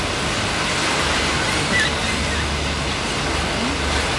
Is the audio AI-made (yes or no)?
no